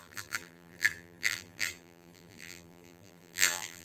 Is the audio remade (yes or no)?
yes